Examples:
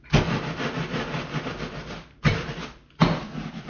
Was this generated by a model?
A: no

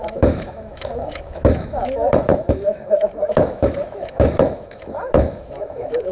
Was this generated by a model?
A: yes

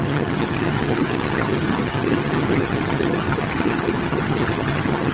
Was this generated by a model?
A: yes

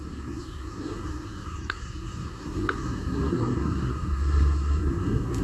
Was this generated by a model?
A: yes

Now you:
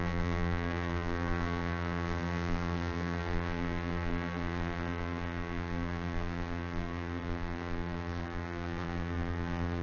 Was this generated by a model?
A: yes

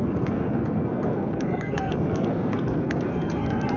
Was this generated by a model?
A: yes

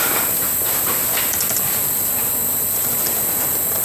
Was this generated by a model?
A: no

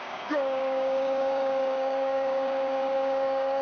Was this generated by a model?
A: yes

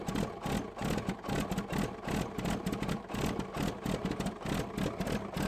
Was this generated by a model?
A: no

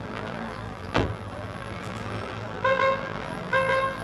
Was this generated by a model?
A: yes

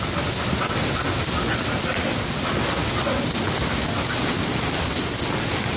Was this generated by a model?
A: no